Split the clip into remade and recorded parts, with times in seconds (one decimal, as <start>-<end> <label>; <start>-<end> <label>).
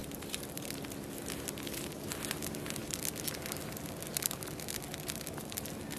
0.0-1.9 remade; 1.9-2.8 recorded; 2.8-4.7 remade; 4.7-6.0 recorded